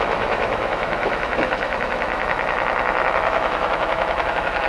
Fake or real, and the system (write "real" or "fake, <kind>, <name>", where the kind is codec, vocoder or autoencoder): fake, autoencoder, DAC-VAE